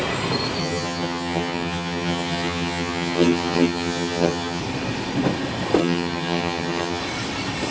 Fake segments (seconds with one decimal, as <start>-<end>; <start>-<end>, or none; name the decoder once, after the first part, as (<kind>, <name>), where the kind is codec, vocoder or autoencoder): 0.6-4.6 (vocoder, HiFi-GAN); 5.8-7.0